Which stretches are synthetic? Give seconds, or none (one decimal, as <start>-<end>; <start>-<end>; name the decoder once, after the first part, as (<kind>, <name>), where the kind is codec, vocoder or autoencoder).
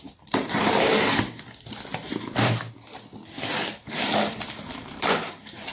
0.0-0.9 (vocoder, BigVGAN v2); 3.8-5.7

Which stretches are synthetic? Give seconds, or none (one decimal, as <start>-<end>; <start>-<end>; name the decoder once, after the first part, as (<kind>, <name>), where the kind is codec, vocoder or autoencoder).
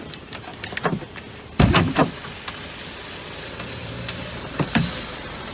0.0-0.5 (vocoder, BigVGAN v2); 1.4-2.0; 3.4-5.5